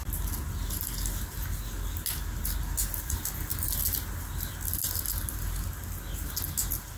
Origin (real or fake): real